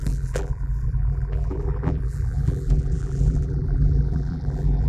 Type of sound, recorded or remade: remade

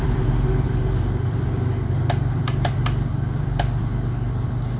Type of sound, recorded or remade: remade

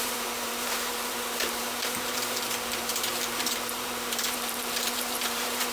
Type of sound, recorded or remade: remade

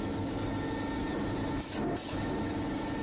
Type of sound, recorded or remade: recorded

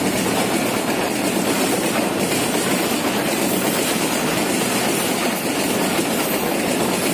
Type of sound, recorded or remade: recorded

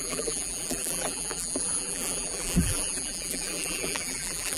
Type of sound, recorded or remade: remade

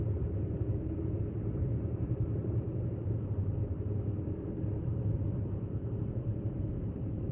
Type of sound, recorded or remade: remade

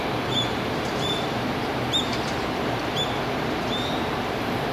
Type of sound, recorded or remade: remade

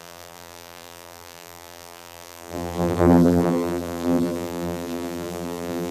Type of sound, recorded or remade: remade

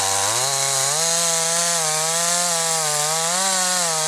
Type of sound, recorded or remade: recorded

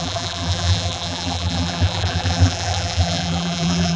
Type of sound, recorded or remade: remade